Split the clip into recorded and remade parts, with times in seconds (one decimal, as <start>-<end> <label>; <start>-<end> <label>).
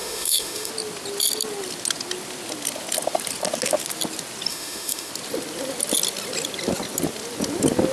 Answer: 0.0-0.7 remade; 0.7-4.5 recorded; 4.5-5.1 remade; 5.1-7.9 recorded